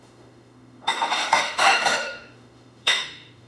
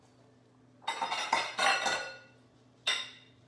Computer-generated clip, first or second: first